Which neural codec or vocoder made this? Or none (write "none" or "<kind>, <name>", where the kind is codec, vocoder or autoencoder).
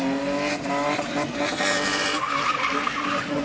none